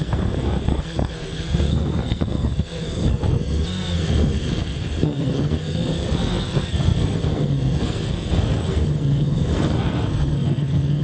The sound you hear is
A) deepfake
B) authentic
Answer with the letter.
A